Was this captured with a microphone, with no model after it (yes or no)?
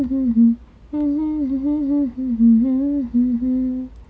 yes